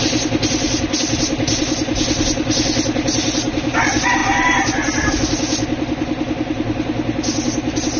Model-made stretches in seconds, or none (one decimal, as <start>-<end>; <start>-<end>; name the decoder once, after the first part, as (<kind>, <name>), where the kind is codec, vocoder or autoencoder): none